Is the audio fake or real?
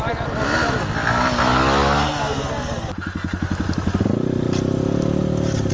real